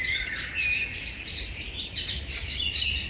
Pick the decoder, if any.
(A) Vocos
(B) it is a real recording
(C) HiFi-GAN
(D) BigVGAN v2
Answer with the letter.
B